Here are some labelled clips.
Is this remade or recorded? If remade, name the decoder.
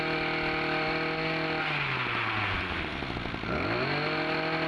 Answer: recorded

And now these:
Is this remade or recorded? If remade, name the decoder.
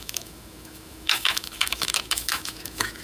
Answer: remade, autoencoder, DAC-VAE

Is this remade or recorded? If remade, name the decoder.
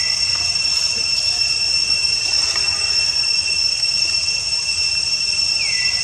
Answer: recorded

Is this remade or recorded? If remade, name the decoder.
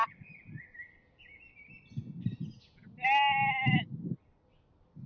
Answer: recorded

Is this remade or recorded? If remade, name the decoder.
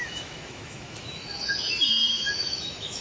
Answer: remade, autoencoder, DAC-VAE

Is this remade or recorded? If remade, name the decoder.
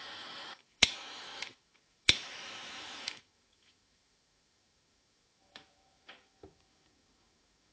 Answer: remade, autoencoder, DAC-VAE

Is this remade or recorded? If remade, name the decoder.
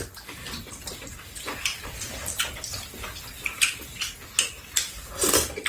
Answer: recorded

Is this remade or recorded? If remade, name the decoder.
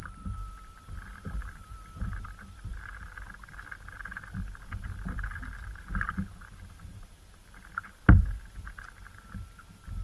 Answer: recorded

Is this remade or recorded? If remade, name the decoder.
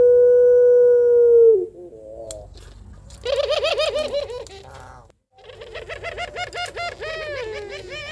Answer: recorded